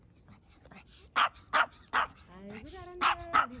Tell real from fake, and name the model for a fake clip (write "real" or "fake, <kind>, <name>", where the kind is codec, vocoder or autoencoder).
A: real